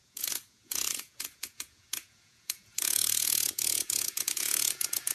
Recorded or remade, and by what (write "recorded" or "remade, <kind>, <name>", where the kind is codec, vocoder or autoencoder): remade, vocoder, Vocos